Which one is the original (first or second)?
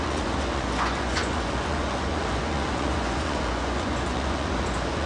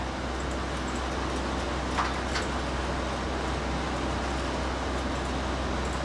second